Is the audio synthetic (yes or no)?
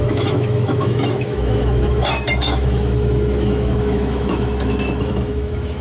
yes